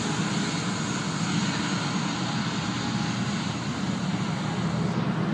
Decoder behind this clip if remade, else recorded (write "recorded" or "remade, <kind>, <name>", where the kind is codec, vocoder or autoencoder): recorded